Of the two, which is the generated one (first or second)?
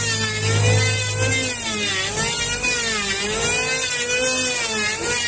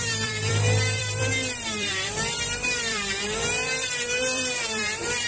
second